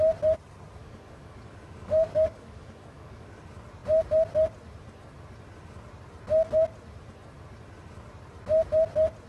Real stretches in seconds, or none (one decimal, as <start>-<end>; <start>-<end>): 0.0-0.8; 3.4-9.3